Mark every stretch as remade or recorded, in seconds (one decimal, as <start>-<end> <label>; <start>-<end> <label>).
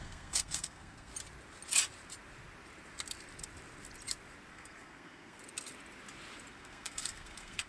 0.0-1.1 remade; 1.1-4.5 recorded; 4.5-5.4 remade; 5.4-6.5 recorded; 6.5-7.7 remade